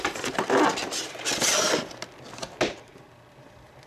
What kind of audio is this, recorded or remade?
recorded